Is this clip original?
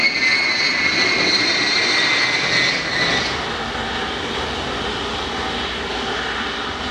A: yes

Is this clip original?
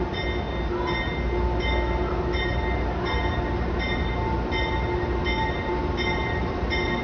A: yes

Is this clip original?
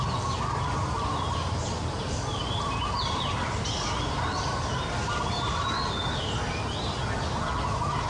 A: yes